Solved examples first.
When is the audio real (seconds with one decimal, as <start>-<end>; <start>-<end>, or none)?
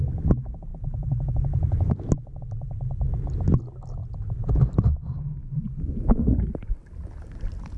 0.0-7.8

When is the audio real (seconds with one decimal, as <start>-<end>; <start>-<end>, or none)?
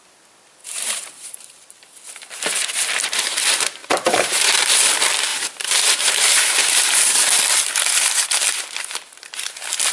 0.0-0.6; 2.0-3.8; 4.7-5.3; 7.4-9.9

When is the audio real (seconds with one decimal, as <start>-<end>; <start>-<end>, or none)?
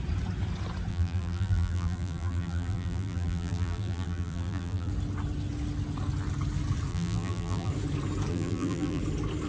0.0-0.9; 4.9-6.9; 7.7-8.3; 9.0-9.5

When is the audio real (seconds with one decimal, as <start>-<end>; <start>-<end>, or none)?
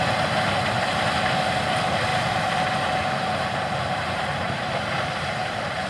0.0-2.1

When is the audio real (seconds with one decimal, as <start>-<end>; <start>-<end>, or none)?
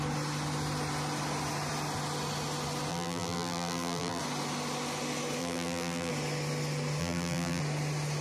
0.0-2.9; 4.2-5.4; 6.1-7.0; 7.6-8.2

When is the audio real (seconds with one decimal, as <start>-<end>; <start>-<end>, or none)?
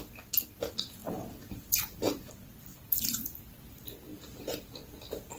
0.0-1.0; 2.3-2.7; 3.4-5.4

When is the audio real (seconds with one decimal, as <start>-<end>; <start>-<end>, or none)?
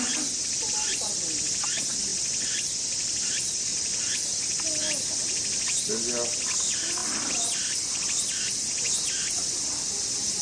0.0-10.4